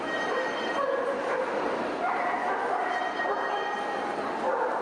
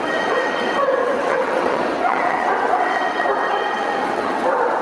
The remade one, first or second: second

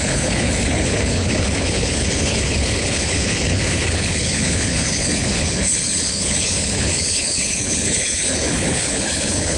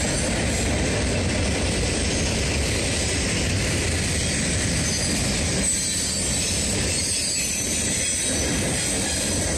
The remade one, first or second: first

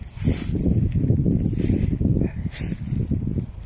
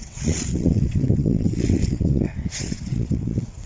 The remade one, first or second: second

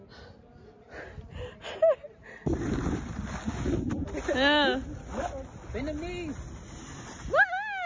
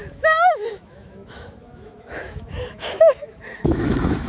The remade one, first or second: second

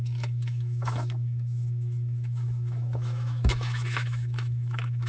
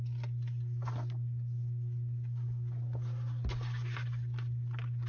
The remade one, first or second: first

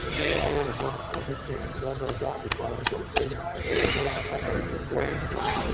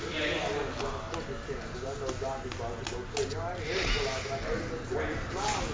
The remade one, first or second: first